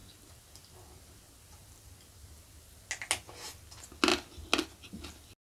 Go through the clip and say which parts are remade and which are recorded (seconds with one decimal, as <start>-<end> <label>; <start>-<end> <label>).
0.0-5.5 recorded